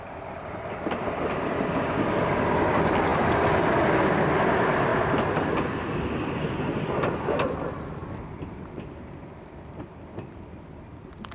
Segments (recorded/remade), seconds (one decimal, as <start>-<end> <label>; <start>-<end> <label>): 0.0-11.3 recorded